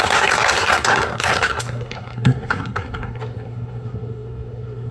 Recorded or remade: remade